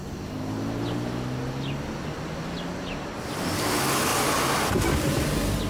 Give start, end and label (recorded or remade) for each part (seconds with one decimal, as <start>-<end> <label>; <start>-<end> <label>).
0.0-5.7 recorded